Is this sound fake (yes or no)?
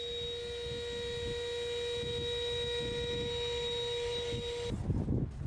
no